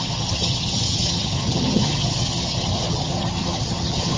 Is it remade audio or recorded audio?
remade